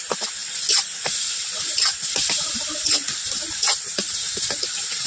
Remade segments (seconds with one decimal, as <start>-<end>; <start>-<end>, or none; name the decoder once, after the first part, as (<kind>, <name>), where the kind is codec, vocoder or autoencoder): none